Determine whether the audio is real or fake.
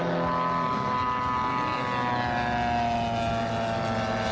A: real